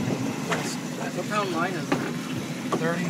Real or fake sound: real